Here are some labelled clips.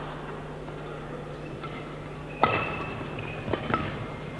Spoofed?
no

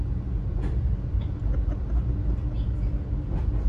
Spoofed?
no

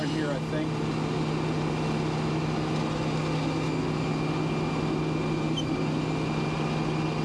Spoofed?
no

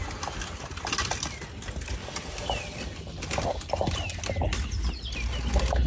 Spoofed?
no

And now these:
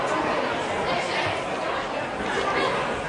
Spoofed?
no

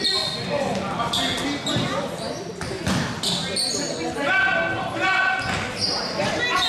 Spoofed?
no